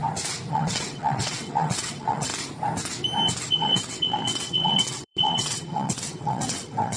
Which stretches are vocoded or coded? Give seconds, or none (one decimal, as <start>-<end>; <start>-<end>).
0.5-2.3; 3.5-7.0

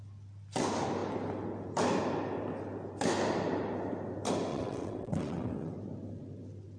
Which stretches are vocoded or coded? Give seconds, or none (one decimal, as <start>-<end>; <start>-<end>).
4.5-5.7

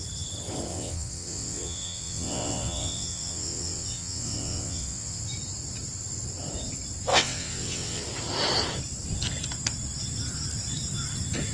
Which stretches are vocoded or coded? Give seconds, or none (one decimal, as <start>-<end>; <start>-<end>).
0.7-5.2; 7.1-8.0

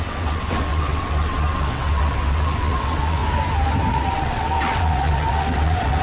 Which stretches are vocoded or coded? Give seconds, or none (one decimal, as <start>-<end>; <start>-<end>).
0.0-3.2; 3.9-6.0

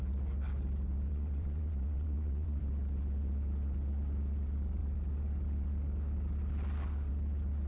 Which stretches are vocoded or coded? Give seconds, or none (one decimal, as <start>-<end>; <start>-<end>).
1.1-2.6